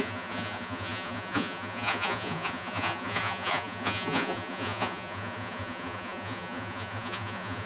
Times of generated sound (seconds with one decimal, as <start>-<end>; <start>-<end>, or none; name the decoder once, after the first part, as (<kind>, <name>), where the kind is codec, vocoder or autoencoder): 0.0-7.7 (vocoder, Vocos)